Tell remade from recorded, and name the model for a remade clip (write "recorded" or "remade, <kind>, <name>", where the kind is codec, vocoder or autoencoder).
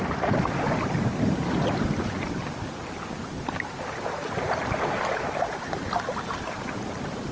recorded